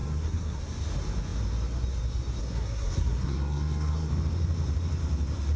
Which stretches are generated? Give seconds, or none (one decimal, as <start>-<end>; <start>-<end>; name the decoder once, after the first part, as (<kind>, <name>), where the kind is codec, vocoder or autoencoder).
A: 0.0-0.6 (codec, SNAC); 2.4-4.1